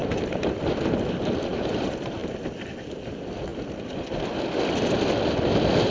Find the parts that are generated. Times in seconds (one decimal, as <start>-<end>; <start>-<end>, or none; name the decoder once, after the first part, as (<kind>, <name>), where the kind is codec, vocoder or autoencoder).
0.0-2.2 (vocoder, BigVGAN v2); 2.8-5.9